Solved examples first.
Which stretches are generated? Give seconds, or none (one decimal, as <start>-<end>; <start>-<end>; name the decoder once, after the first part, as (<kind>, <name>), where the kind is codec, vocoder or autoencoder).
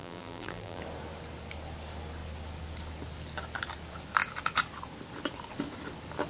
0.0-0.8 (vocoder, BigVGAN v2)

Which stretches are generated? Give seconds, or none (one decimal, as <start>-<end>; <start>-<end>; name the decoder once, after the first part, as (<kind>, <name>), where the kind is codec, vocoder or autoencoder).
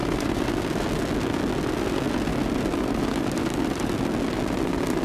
0.0-0.5 (vocoder, BigVGAN v2); 2.3-4.0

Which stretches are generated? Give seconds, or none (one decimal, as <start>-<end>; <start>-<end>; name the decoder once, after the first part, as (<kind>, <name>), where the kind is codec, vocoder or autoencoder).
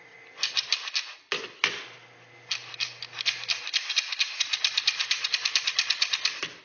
1.3-1.8 (vocoder, BigVGAN v2)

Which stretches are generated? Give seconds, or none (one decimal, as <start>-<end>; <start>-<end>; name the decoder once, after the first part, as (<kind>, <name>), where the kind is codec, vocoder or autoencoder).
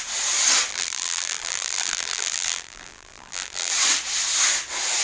0.7-3.7 (vocoder, BigVGAN v2)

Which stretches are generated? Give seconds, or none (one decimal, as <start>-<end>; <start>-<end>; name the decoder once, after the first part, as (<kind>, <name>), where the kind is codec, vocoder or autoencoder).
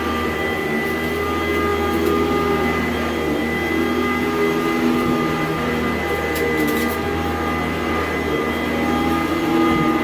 none